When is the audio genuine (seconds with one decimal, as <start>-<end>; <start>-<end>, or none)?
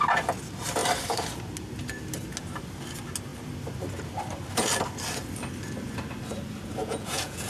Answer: 0.0-6.8